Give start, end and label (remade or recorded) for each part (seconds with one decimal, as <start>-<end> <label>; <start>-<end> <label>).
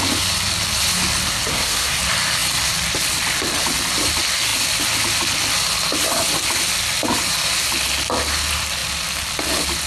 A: 0.0-1.5 recorded; 1.5-2.0 remade; 2.0-9.9 recorded